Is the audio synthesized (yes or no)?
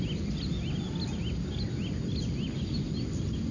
no